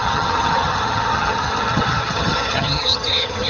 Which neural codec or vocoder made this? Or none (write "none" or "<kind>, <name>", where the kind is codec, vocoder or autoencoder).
vocoder, HiFi-GAN